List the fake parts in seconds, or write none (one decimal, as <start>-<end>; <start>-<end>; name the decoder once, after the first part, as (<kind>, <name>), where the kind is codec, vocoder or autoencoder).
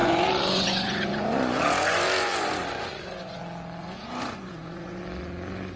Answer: 0.0-3.4 (vocoder, Vocos); 3.8-5.0